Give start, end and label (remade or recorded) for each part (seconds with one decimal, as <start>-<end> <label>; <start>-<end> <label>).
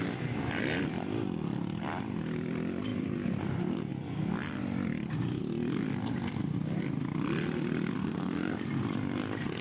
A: 0.0-8.0 recorded; 8.0-8.6 remade; 8.6-9.6 recorded